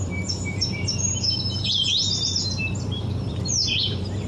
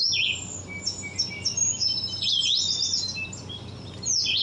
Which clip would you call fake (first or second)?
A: first